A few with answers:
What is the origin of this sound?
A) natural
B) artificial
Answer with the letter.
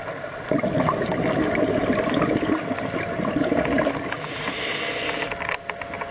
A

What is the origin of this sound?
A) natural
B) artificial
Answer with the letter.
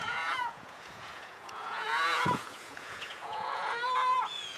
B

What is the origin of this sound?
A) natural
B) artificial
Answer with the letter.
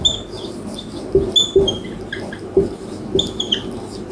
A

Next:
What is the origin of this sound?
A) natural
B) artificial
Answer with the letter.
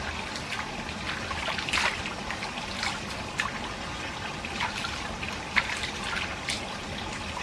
A